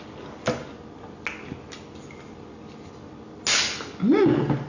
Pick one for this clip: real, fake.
real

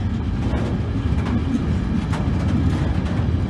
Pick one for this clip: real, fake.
real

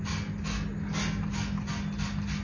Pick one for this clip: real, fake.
real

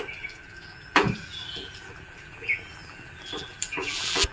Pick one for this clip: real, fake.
fake